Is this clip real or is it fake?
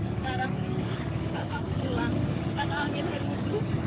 fake